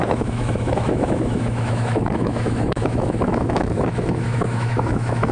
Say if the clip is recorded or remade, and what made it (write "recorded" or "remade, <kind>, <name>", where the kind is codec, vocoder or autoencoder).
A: remade, autoencoder, DAC-VAE